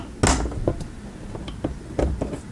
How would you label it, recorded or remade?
recorded